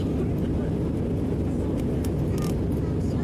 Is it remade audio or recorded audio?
recorded